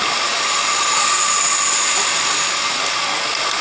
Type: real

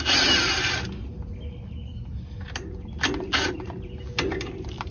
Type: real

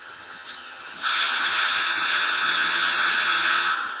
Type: fake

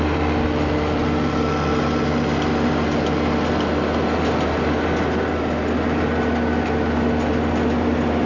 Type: real